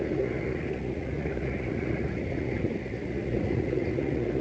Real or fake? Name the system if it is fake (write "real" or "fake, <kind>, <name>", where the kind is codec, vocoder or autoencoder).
fake, vocoder, Vocos